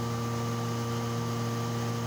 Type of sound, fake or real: real